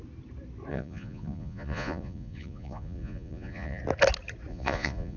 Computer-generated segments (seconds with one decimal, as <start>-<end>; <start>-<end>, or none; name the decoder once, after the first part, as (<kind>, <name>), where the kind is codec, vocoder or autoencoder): 0.7-3.8 (vocoder, Vocos); 4.5-5.2